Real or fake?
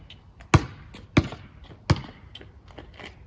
real